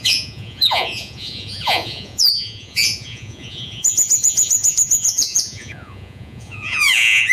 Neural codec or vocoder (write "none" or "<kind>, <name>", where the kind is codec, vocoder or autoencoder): vocoder, Vocos